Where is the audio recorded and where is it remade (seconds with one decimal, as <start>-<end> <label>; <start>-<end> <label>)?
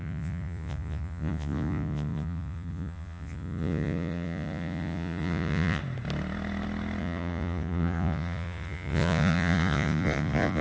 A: 0.0-5.8 remade; 5.8-7.0 recorded; 7.0-10.6 remade